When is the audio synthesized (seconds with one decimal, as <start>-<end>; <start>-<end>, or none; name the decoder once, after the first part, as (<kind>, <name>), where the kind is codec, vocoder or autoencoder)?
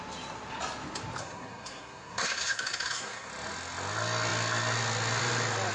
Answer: 1.2-3.3 (codec, SNAC)